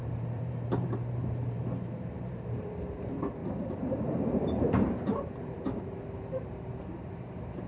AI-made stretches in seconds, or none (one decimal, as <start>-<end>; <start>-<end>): 0.0-7.7